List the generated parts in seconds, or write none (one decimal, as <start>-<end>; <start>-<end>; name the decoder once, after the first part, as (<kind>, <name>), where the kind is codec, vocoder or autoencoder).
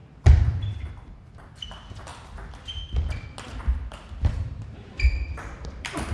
0.0-2.1 (vocoder, BigVGAN v2); 3.6-6.1